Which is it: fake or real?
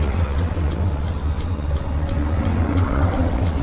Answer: fake